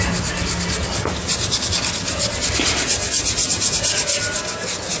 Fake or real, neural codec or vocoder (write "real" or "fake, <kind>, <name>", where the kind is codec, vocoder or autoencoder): real